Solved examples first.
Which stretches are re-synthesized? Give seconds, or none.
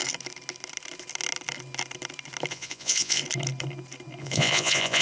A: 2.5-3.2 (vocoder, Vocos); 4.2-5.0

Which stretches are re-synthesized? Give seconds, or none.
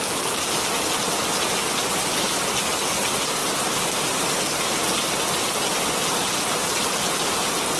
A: none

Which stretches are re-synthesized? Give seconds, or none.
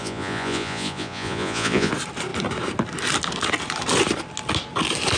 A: 0.0-1.9 (vocoder, Vocos)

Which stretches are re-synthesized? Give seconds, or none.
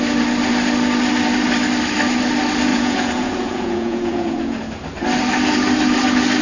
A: 2.7-4.6 (vocoder, Vocos)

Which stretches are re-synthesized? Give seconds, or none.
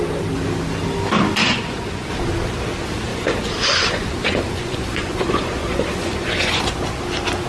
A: 1.4-2.1 (vocoder, Vocos); 3.1-6.6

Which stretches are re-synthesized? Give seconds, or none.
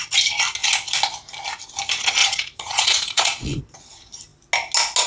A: 2.2-3.6 (vocoder, Vocos)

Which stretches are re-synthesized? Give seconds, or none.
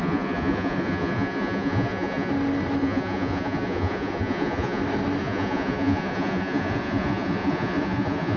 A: 0.0-2.3 (vocoder, Vocos); 2.8-4.8; 5.2-8.4